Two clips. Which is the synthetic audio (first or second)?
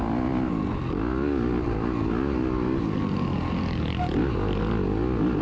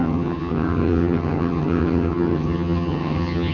second